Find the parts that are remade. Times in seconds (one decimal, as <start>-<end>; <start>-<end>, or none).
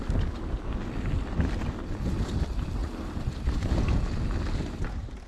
2.8-4.0